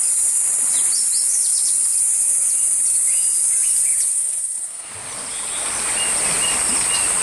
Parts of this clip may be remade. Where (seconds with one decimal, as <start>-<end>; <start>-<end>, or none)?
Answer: 4.1-4.9